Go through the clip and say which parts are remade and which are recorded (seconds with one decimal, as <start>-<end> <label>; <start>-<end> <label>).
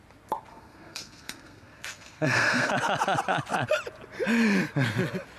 0.0-0.5 recorded; 0.5-2.7 remade; 2.7-5.4 recorded